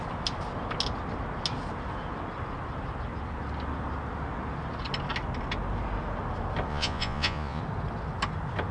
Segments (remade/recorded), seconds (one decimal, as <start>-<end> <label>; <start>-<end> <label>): 0.0-6.7 recorded; 6.7-7.6 remade; 7.6-8.7 recorded

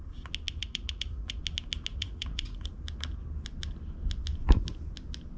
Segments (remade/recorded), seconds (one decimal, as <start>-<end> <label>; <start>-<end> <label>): 0.0-0.6 recorded; 0.6-1.4 remade; 1.4-1.9 recorded; 1.9-2.7 remade; 2.7-5.4 recorded